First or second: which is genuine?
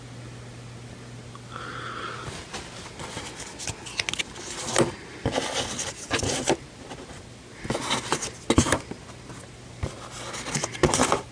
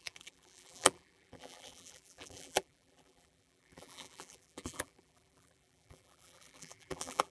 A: first